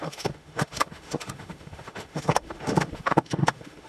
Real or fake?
fake